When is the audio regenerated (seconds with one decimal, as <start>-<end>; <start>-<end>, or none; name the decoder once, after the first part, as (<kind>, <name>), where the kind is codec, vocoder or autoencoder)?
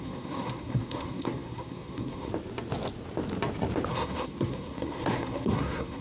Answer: 0.0-2.3 (codec, SNAC); 3.9-6.0